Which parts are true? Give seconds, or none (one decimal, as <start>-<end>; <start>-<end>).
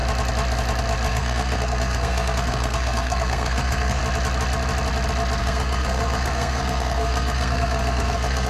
0.0-1.1; 4.0-5.4